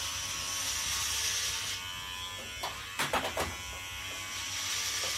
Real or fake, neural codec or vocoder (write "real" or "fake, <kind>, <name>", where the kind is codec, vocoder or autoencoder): real